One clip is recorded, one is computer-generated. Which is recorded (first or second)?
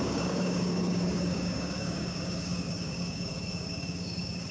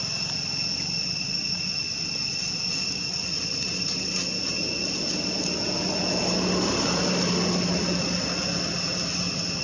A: second